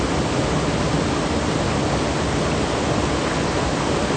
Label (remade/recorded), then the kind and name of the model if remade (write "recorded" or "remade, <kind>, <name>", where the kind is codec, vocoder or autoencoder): recorded